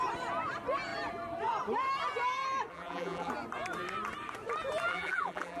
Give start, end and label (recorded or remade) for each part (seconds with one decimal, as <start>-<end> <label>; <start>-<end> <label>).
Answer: 0.0-2.7 recorded; 2.7-3.3 remade; 3.3-4.9 recorded; 4.9-5.6 remade